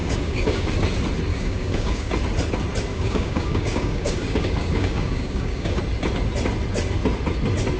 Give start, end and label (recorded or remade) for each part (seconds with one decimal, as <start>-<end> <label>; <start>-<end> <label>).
0.0-0.7 remade; 0.7-1.3 recorded; 1.3-2.1 remade; 2.1-2.9 recorded; 2.9-5.8 remade; 5.8-7.8 recorded